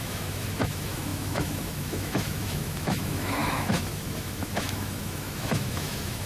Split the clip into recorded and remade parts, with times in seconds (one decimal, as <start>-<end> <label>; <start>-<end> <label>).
0.0-6.3 remade